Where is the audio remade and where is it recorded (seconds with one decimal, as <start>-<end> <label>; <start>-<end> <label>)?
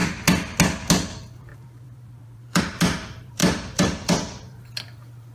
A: 0.0-1.1 recorded; 1.1-5.3 remade